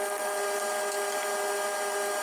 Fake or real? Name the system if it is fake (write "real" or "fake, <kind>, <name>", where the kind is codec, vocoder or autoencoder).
real